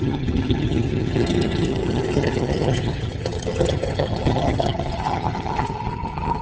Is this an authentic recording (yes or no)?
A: no